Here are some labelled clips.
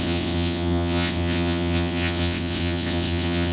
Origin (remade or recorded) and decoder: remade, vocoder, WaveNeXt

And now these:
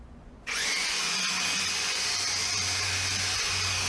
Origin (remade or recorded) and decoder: remade, vocoder, Vocos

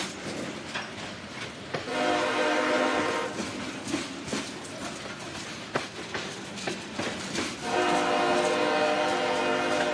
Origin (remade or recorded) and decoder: recorded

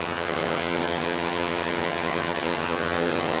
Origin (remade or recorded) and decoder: remade, vocoder, HiFi-GAN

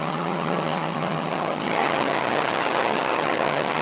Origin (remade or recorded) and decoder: remade, vocoder, HiFi-GAN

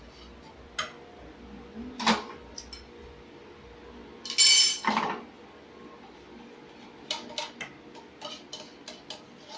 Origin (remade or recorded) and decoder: recorded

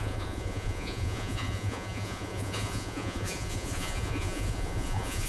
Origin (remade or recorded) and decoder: remade, vocoder, Vocos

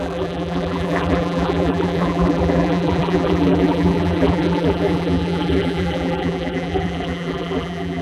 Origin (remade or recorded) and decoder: remade, vocoder, BigVGAN v2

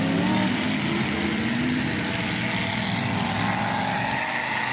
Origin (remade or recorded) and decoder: recorded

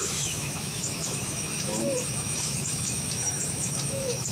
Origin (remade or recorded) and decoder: remade, autoencoder, DAC-VAE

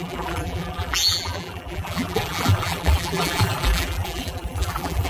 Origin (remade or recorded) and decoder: remade, vocoder, BigVGAN v2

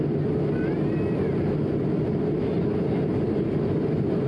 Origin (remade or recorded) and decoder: recorded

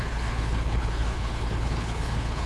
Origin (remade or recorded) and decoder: remade, codec, HILCodec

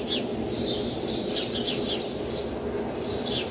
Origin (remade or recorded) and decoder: recorded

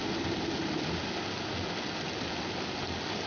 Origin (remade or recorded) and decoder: recorded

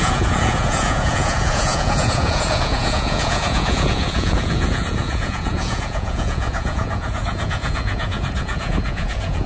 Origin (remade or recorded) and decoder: remade, vocoder, Vocos